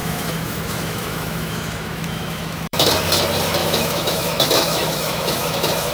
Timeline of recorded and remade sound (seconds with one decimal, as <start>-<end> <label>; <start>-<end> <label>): 0.0-2.9 remade; 2.9-3.6 recorded; 3.6-5.9 remade